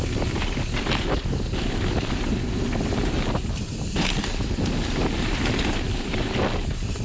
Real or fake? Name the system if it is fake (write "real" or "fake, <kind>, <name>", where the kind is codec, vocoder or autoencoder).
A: real